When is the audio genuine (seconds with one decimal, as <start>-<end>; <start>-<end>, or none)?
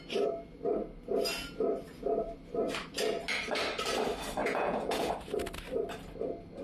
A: 0.0-4.4; 5.1-6.6